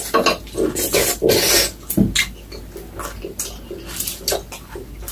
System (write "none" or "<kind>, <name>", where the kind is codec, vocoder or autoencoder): none